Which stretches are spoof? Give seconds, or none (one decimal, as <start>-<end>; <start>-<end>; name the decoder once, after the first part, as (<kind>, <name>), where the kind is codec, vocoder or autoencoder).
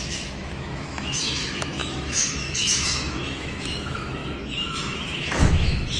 0.0-6.0 (autoencoder, DAC-VAE)